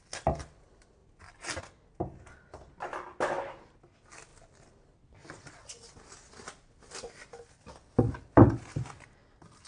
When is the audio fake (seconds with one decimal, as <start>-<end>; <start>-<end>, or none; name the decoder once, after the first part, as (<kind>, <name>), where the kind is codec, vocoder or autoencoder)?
none

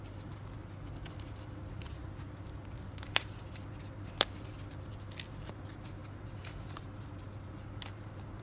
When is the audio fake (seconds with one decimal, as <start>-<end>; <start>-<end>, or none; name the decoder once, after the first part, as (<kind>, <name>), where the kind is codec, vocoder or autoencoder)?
none